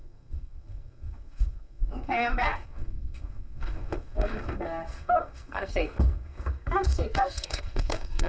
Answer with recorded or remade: remade